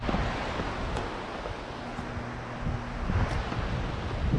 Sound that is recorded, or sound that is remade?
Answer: recorded